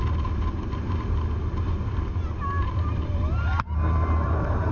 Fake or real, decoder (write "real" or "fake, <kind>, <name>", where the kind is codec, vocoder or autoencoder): real